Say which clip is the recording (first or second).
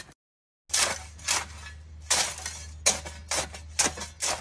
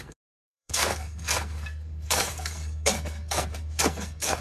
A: first